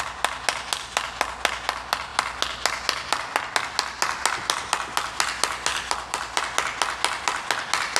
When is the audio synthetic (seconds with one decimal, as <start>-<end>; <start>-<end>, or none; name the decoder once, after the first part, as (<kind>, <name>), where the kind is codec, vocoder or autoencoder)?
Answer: 5.7-6.4 (vocoder, BigVGAN v2)